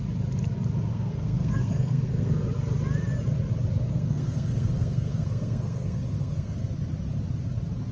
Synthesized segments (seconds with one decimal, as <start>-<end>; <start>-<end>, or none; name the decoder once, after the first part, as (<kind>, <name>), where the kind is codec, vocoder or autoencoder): 0.9-2.3 (codec, SNAC); 3.9-6.6